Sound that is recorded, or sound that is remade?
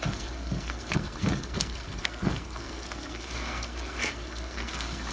remade